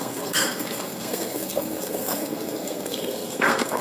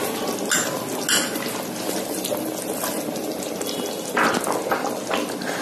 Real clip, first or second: second